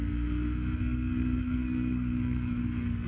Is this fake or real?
fake